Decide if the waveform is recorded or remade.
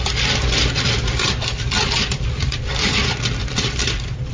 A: remade